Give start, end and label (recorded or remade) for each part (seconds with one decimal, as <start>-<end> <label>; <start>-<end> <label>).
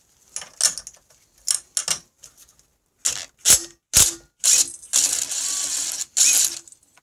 0.0-7.0 recorded